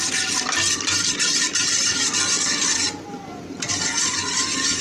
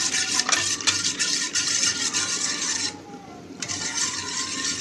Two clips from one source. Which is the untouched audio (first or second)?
first